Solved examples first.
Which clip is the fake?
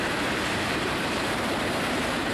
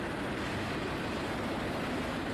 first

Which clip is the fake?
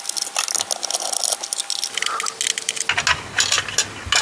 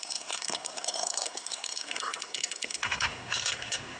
second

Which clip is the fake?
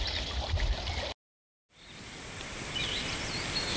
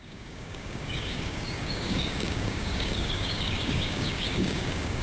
second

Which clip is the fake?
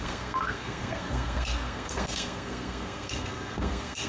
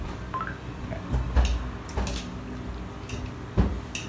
first